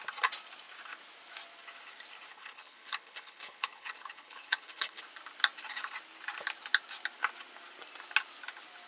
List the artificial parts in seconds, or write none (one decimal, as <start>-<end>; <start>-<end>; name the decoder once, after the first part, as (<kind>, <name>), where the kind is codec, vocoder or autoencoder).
2.3-5.0 (codec, HILCodec)

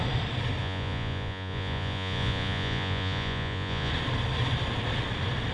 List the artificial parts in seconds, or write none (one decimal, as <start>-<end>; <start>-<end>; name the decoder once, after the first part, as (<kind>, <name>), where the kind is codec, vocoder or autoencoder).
0.6-3.9 (vocoder, Vocos)

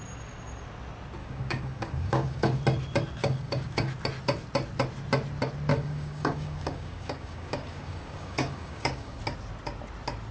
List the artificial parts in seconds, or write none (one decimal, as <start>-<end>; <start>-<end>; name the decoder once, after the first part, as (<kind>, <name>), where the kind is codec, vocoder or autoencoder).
1.2-2.6 (codec, DAC); 3.2-3.9; 5.7-9.2

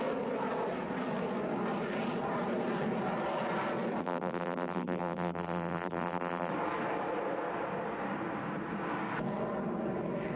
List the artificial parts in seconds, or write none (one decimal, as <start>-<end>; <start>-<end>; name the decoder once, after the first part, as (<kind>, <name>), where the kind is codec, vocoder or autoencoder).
4.0-6.5 (vocoder, BigVGAN v2)